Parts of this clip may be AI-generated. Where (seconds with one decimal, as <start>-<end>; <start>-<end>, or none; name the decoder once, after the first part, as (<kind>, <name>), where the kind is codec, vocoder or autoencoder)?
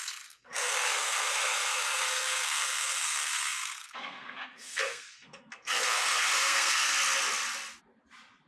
0.0-6.9 (codec, SNAC)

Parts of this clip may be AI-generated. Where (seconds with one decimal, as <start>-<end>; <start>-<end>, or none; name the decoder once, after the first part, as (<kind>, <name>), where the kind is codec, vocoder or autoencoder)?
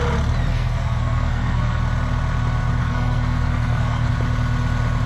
0.5-1.8 (codec, SNAC); 2.8-4.1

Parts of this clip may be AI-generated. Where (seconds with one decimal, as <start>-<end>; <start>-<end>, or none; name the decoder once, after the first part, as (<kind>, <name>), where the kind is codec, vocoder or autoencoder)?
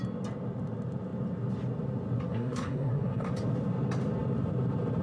2.3-3.3 (codec, SNAC)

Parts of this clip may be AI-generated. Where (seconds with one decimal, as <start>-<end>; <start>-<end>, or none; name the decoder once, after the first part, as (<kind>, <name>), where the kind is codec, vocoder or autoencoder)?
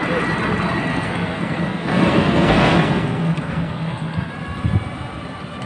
0.9-4.3 (codec, SNAC)